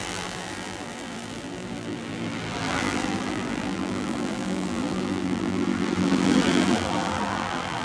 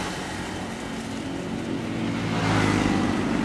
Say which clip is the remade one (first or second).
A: first